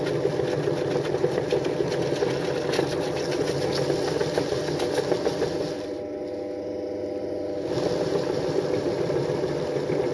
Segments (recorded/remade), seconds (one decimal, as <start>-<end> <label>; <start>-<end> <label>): 0.0-10.1 recorded